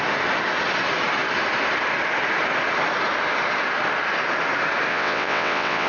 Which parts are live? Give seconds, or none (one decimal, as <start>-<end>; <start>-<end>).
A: 0.0-4.9